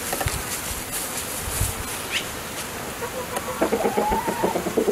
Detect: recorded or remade recorded